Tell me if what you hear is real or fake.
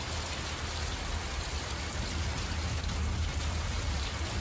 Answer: real